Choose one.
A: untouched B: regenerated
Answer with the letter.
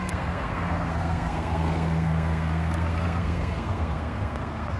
B